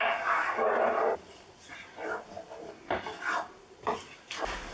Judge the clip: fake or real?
real